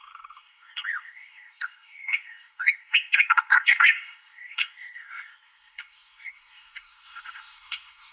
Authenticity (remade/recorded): remade